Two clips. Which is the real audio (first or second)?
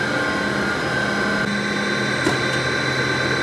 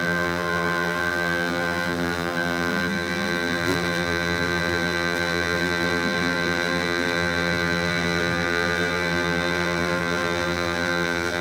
first